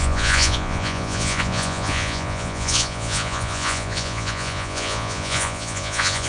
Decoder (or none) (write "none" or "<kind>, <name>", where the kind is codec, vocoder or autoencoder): vocoder, Vocos